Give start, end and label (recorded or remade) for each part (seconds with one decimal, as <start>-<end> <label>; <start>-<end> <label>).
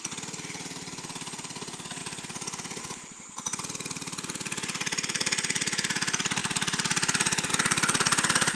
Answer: 0.0-6.4 recorded; 6.4-7.5 remade; 7.5-8.6 recorded